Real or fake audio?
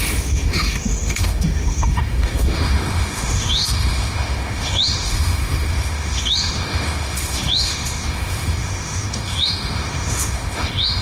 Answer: fake